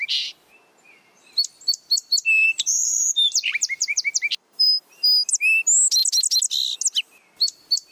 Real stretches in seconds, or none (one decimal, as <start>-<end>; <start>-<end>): 0.0-2.4; 4.8-7.9